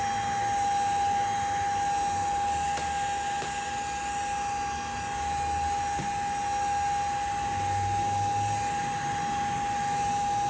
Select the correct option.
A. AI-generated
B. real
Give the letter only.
B